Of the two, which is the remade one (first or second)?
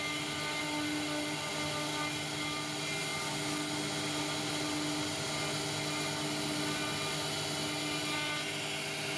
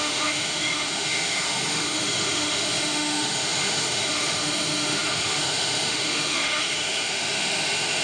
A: second